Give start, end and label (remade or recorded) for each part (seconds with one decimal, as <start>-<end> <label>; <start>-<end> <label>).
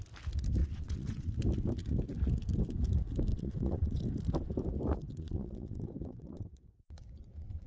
0.0-0.6 recorded; 0.6-1.3 remade; 1.3-3.3 recorded; 3.3-4.0 remade; 4.0-5.0 recorded; 5.0-7.7 remade